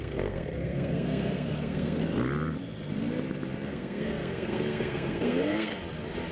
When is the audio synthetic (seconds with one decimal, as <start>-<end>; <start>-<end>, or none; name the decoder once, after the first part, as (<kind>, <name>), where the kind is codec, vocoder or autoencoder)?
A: 0.0-2.0 (codec, SNAC); 3.7-5.7